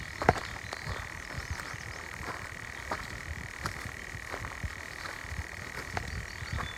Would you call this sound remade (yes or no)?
no